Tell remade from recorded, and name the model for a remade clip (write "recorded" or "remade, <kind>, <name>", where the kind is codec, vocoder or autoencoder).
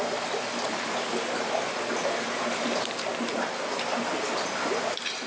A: recorded